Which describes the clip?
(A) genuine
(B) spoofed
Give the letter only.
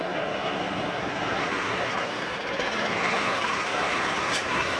B